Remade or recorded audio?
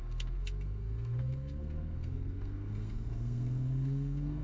remade